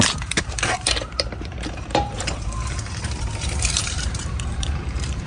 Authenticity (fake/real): fake